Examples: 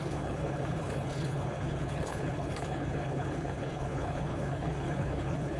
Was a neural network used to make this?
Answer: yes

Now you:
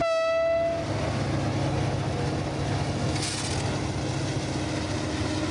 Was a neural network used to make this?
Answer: no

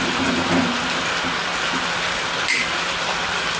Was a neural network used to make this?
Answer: no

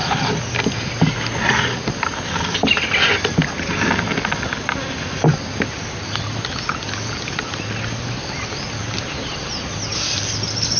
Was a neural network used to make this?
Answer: no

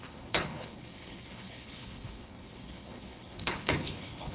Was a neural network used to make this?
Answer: yes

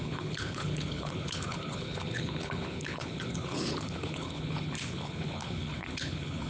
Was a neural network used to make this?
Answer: yes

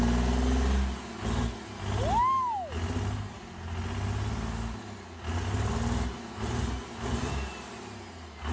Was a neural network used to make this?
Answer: no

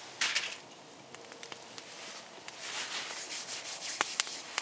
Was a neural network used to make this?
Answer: no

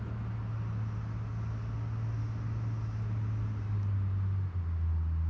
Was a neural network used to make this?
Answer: no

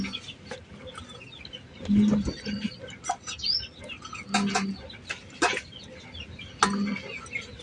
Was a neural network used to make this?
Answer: no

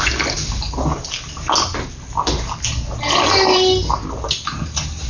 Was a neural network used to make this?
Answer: no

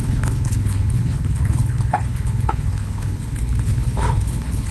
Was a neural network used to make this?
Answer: yes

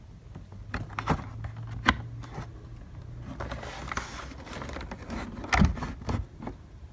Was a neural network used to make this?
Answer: no